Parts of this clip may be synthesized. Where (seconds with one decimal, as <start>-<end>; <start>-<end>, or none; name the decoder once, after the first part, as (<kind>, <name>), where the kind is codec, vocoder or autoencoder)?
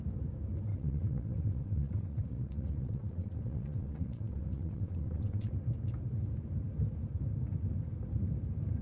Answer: 0.7-5.5 (vocoder, WaveNeXt)